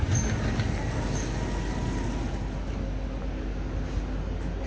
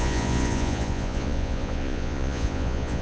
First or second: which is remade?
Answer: second